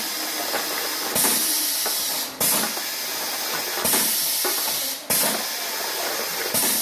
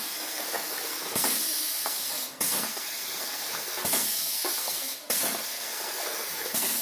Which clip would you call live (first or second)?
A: first